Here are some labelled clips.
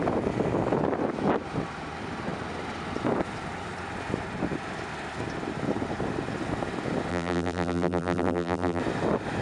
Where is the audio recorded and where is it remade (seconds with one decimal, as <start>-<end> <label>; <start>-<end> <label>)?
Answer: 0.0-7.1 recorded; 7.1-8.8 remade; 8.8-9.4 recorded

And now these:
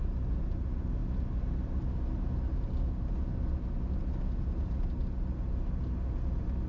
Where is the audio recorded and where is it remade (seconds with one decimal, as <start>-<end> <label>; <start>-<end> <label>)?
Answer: 0.0-6.7 recorded

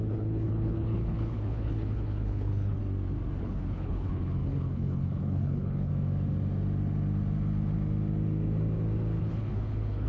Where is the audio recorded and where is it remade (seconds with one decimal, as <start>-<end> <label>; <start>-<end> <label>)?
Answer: 0.0-2.8 remade; 2.8-3.4 recorded; 3.4-5.9 remade; 5.9-9.2 recorded; 9.2-10.1 remade

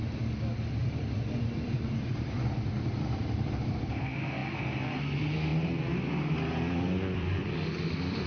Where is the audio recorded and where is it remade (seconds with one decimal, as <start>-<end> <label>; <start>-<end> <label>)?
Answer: 0.0-0.8 recorded; 0.8-4.0 remade; 4.0-8.3 recorded